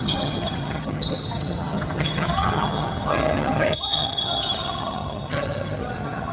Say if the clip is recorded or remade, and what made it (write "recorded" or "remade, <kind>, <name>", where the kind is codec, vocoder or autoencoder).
remade, vocoder, HiFi-GAN